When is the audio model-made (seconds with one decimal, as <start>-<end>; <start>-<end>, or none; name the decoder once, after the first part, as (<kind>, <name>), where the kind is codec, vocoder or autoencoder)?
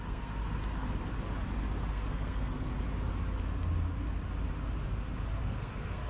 0.0-0.4 (codec, SNAC); 1.9-2.7; 5.4-6.1